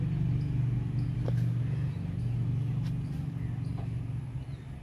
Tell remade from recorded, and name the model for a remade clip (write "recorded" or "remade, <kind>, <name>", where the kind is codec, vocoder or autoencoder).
recorded